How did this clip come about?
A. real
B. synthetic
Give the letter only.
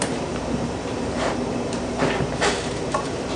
B